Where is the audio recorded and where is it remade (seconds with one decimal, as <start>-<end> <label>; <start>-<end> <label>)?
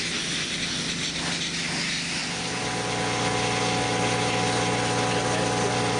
0.0-6.0 recorded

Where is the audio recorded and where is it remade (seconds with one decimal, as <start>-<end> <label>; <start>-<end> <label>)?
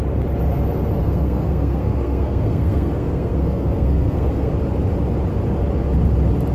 0.0-1.0 recorded; 1.0-4.5 remade; 4.5-6.5 recorded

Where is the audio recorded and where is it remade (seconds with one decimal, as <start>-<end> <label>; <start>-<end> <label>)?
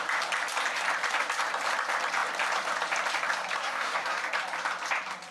0.0-3.6 recorded; 3.6-4.2 remade; 4.2-5.3 recorded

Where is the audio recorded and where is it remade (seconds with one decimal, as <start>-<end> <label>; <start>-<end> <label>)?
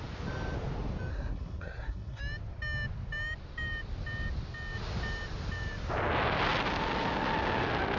0.0-1.1 recorded; 1.1-2.2 remade; 2.2-8.0 recorded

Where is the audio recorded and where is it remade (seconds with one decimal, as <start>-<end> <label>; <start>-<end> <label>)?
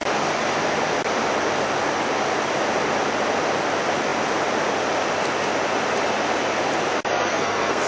0.0-7.1 recorded; 7.1-7.9 remade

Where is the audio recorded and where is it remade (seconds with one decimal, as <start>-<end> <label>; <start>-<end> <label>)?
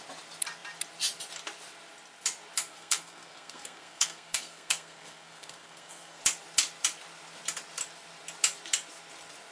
0.0-2.7 recorded; 2.7-6.2 remade; 6.2-9.5 recorded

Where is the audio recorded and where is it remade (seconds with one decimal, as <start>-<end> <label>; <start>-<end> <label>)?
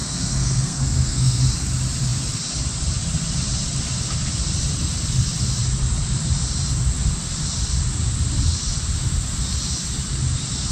0.0-1.4 remade; 1.4-10.7 recorded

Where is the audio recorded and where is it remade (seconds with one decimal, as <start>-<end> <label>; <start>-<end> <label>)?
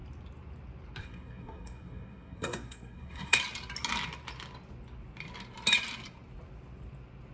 0.0-1.0 recorded; 1.0-3.4 remade; 3.4-7.3 recorded